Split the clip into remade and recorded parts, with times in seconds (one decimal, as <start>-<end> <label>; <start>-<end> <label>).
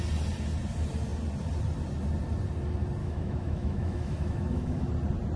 0.0-3.0 recorded; 3.0-4.9 remade; 4.9-5.4 recorded